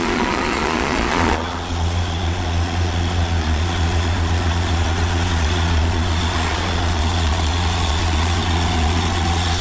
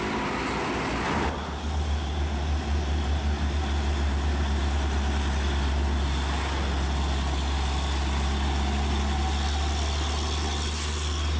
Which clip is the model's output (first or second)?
first